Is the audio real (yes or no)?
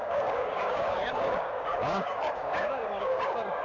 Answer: no